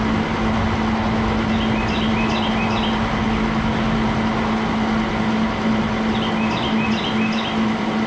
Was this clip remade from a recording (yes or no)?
no